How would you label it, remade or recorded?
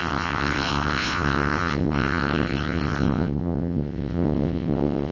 remade